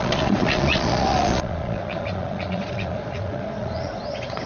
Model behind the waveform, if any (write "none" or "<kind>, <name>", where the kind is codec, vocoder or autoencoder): vocoder, Vocos